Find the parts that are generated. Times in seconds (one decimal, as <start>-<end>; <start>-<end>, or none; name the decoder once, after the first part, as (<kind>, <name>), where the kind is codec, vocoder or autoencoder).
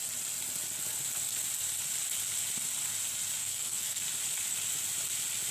3.4-4.0 (codec, SNAC)